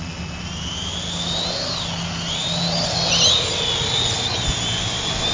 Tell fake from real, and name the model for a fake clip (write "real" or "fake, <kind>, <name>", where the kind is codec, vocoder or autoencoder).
real